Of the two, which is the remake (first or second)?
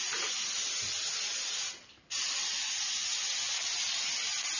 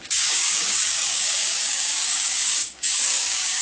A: second